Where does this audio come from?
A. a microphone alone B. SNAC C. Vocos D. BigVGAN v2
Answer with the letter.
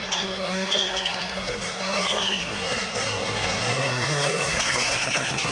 B